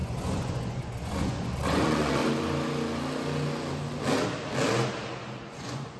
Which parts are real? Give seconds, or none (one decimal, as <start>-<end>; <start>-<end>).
2.2-5.4